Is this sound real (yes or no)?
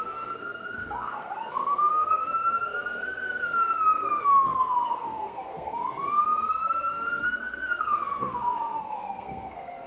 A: no